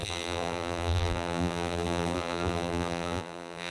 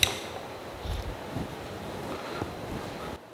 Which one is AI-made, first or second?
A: first